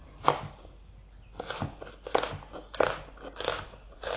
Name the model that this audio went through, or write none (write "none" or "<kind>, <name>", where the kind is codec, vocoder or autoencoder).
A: none